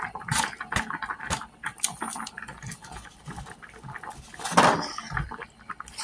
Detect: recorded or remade recorded